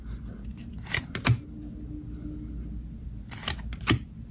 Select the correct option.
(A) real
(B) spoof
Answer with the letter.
A